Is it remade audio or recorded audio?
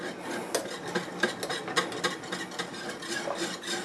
recorded